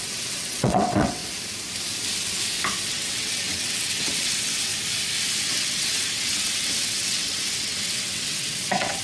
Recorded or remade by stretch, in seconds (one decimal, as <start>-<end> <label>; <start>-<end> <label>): 0.0-1.2 remade; 1.2-2.9 recorded; 2.9-4.7 remade; 4.7-5.5 recorded; 5.5-9.0 remade